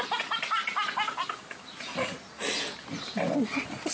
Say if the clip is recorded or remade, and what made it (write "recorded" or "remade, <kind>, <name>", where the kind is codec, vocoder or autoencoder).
recorded